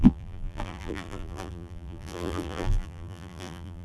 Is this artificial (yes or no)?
yes